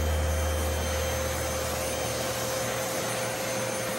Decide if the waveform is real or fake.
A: real